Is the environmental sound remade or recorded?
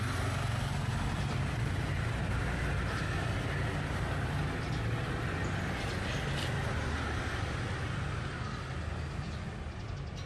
recorded